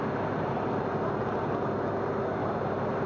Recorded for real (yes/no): yes